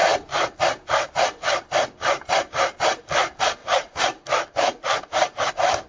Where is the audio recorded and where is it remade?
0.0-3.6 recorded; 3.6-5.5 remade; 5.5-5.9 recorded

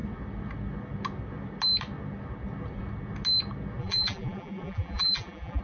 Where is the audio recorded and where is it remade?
0.0-3.8 recorded; 3.8-5.6 remade

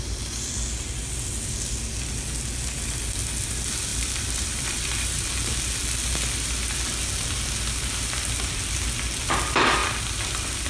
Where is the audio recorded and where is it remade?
0.0-3.9 recorded; 3.9-5.1 remade; 5.1-9.8 recorded; 9.8-10.7 remade

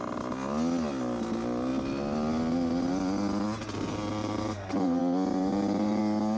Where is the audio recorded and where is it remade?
0.0-4.2 recorded; 4.2-5.0 remade; 5.0-5.5 recorded; 5.5-6.0 remade; 6.0-6.4 recorded

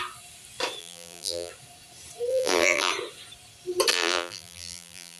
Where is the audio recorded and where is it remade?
0.0-0.8 recorded; 0.8-1.5 remade; 1.5-2.3 recorded; 2.3-2.9 remade; 2.9-3.9 recorded; 3.9-5.2 remade